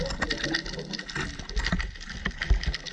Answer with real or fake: real